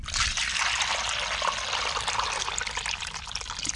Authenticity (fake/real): real